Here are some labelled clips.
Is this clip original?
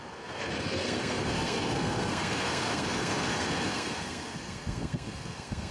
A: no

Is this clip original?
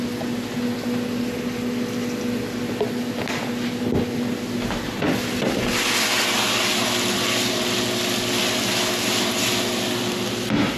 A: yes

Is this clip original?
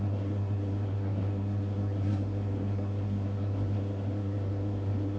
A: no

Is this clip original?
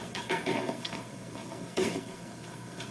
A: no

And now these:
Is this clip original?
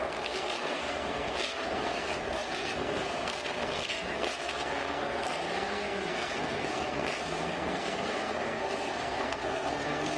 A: no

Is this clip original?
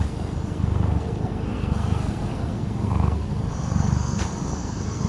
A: no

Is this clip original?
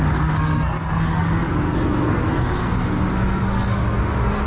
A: no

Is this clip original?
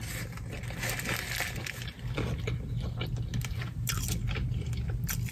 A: yes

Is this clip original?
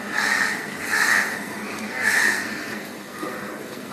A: no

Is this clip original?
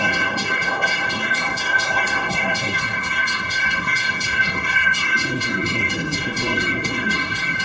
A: no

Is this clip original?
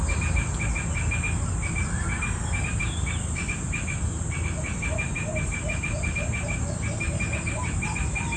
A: yes